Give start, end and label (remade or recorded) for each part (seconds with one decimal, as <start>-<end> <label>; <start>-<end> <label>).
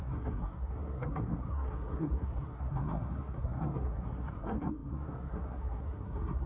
0.0-6.5 remade